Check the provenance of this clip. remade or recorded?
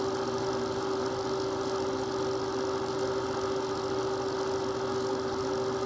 recorded